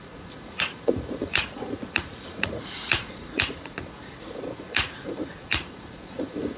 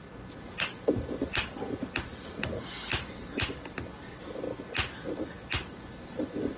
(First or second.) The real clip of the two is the second